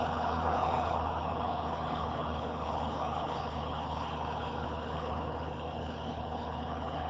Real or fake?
fake